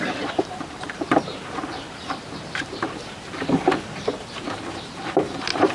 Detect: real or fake fake